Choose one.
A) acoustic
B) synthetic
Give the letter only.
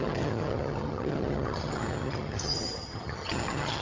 B